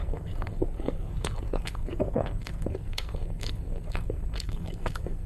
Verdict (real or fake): fake